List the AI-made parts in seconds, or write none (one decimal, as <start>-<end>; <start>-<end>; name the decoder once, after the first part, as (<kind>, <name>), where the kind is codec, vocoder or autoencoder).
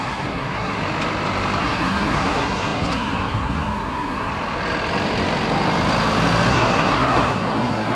0.0-0.8 (codec, SNAC); 1.6-4.3; 6.5-8.0